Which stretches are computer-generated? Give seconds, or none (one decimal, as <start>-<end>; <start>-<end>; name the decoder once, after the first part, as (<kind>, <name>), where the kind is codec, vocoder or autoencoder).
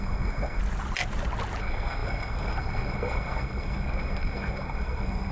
0.0-0.6 (codec, SNAC); 1.6-5.3